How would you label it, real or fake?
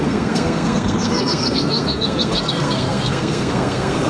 fake